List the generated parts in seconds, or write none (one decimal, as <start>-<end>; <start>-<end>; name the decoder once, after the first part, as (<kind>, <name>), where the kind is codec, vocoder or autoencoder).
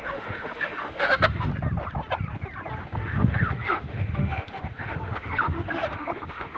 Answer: 0.0-1.5 (autoencoder, DAC-VAE); 2.8-6.6